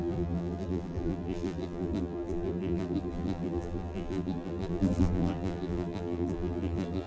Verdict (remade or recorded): remade